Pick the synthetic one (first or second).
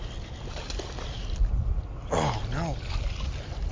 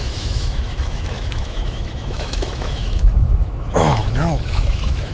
second